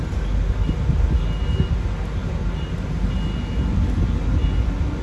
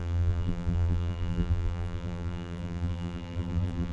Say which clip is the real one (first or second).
first